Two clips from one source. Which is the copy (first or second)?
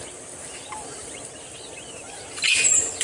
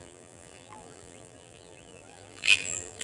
second